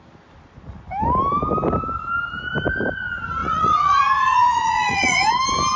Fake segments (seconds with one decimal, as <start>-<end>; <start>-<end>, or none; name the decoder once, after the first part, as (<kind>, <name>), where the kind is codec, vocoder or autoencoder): 3.4-5.3 (vocoder, Vocos)